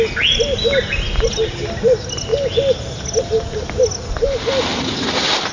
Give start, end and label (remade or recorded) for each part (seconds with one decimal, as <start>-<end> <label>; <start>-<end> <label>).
0.0-5.5 recorded